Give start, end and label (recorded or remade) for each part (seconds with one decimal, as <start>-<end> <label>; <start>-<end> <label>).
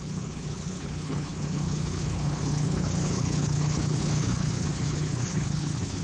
0.0-6.0 remade